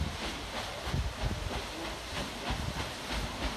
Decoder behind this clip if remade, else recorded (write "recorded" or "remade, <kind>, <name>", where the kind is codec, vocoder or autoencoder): recorded